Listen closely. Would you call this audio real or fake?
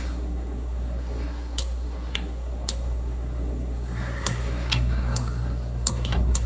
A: fake